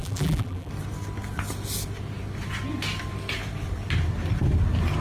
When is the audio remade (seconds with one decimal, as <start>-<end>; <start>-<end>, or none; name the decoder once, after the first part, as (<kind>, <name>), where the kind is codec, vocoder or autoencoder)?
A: 0.0-0.7 (vocoder, BigVGAN v2)